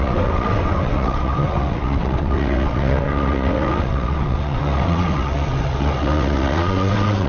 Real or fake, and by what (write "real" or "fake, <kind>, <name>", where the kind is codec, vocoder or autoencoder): fake, vocoder, WaveNeXt